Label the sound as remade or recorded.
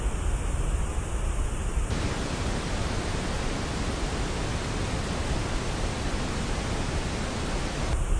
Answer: recorded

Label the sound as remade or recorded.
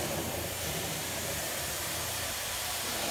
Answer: remade